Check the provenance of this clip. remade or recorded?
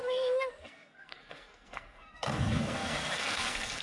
remade